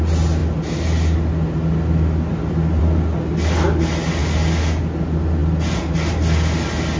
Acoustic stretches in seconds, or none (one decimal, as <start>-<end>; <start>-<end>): 0.0-7.0

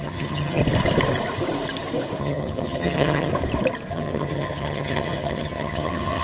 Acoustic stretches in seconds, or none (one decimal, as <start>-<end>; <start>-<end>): 0.6-2.2; 3.3-3.9